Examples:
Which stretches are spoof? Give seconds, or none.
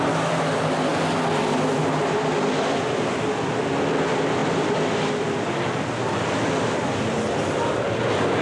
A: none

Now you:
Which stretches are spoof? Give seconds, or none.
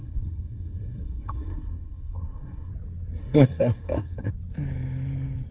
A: 0.0-2.7 (codec, SNAC); 3.2-4.3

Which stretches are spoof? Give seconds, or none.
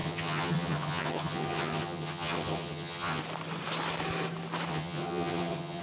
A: 0.0-3.2 (vocoder, HiFi-GAN); 4.7-5.8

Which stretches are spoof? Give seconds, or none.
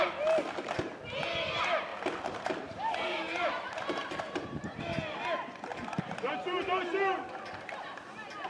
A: 1.9-4.8 (vocoder, BigVGAN v2); 5.7-6.3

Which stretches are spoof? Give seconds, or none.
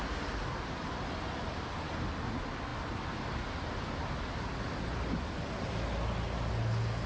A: none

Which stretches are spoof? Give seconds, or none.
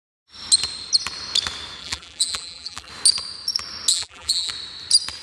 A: 1.8-2.9 (vocoder, BigVGAN v2); 3.9-4.5